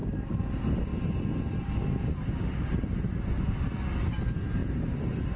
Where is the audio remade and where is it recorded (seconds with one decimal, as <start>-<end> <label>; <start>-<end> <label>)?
0.0-0.5 remade; 0.5-4.6 recorded; 4.6-5.4 remade